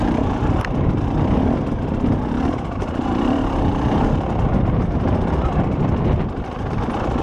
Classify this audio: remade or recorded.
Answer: remade